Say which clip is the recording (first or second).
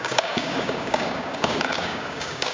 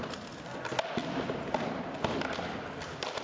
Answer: second